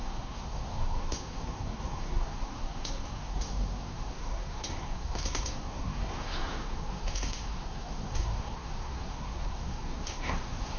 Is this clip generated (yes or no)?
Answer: yes